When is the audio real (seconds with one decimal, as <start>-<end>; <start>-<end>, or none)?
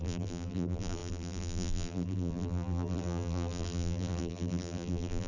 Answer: none